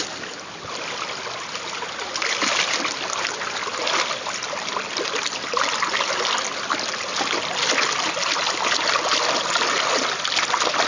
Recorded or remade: recorded